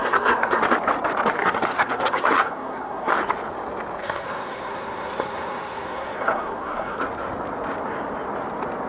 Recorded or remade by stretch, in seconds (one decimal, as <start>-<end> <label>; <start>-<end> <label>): 0.0-0.6 remade; 0.6-1.4 recorded; 1.4-3.1 remade; 3.1-4.0 recorded; 4.0-7.0 remade; 7.0-8.9 recorded